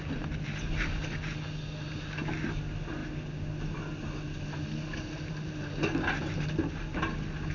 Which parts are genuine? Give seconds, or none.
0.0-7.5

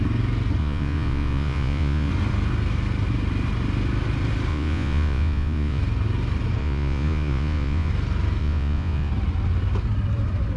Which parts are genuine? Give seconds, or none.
0.0-0.6; 2.1-4.5; 5.8-6.6; 7.9-8.4; 9.1-10.6

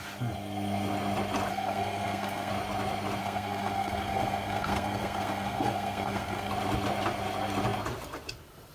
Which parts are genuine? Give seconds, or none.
0.0-1.5; 2.5-3.2; 6.5-8.7

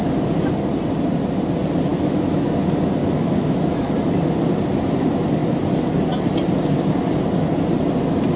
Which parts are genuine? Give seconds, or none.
0.0-1.9; 2.6-3.0; 3.9-8.4

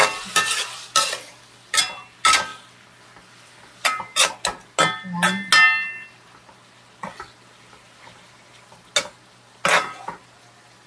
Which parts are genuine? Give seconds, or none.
0.0-10.9

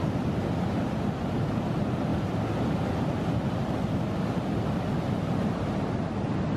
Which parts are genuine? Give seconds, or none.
0.0-6.6

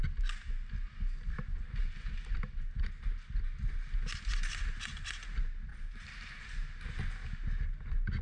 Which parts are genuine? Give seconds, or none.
0.0-5.7; 6.3-8.2

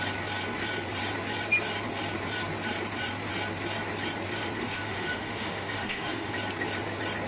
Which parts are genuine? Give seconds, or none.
0.0-4.6; 6.3-7.3